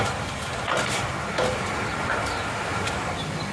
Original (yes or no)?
yes